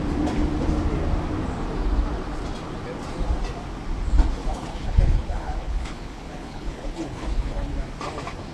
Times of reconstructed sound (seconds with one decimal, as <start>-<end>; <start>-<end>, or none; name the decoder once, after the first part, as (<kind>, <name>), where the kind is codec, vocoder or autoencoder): 4.4-7.7 (codec, HILCodec)